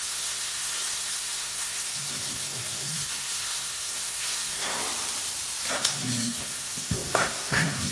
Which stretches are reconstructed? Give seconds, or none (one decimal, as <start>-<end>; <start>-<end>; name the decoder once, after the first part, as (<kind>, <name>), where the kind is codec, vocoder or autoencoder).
0.0-4.8 (codec, SNAC); 5.7-7.9